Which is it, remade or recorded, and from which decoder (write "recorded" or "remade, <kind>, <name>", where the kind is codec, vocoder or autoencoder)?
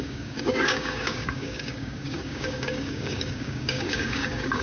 remade, codec, DAC